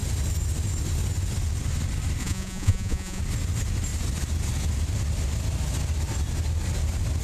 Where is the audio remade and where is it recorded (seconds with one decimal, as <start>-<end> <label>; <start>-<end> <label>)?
0.0-2.2 recorded; 2.2-3.2 remade; 3.2-7.2 recorded